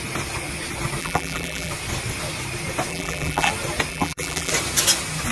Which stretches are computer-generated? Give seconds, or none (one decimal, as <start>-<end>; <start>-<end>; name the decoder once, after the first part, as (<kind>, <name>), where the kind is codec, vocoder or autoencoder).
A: 1.0-1.7 (vocoder, BigVGAN v2); 2.9-3.5; 3.9-4.5